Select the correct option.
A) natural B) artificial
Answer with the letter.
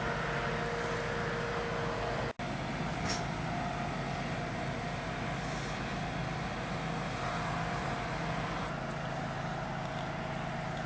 A